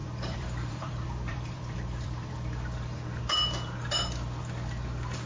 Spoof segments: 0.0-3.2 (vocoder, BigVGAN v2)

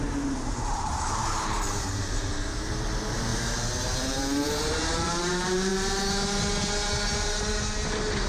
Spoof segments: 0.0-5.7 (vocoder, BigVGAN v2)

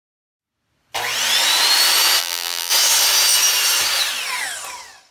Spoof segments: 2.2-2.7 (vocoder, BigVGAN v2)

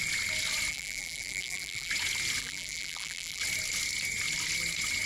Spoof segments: 0.7-1.9 (vocoder, BigVGAN v2); 2.4-3.4

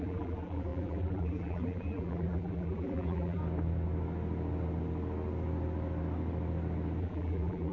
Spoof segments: 0.0-3.4 (vocoder, BigVGAN v2); 7.0-7.7

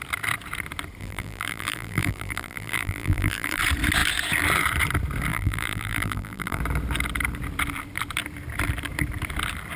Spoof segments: 1.0-3.6 (vocoder, BigVGAN v2); 5.3-6.6

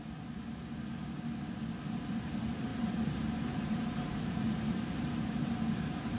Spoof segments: 2.7-6.2 (vocoder, BigVGAN v2)